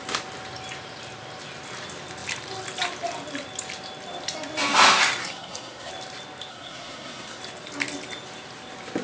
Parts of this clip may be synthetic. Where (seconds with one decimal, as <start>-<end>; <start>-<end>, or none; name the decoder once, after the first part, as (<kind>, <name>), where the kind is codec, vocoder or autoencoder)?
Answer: 5.2-5.9 (codec, SNAC); 6.5-7.4